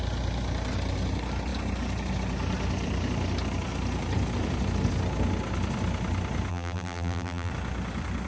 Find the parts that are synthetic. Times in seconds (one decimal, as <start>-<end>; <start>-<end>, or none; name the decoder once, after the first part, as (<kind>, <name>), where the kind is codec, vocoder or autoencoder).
6.5-7.5 (vocoder, BigVGAN v2)